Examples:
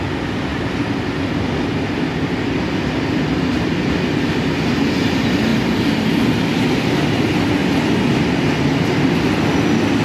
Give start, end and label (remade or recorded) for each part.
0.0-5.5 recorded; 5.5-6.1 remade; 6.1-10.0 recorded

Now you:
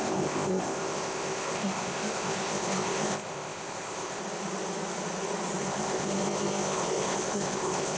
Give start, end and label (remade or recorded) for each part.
0.0-4.2 remade; 4.2-5.6 recorded; 5.6-8.0 remade

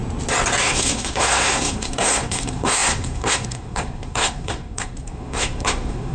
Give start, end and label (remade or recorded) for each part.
0.0-0.6 recorded; 0.6-6.1 remade

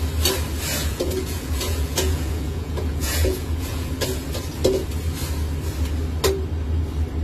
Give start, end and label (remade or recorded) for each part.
0.0-0.8 recorded; 0.8-3.9 remade; 3.9-7.2 recorded

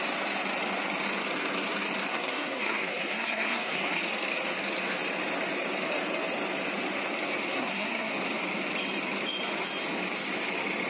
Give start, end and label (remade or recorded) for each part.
0.0-2.1 recorded; 2.1-4.0 remade; 4.0-7.5 recorded; 7.5-8.1 remade; 8.1-10.9 recorded